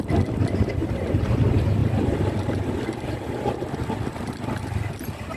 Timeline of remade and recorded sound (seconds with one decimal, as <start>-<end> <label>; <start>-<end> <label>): 0.0-5.4 recorded